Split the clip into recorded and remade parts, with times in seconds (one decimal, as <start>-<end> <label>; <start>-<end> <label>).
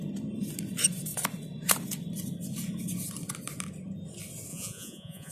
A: 0.0-4.5 recorded; 4.5-5.3 remade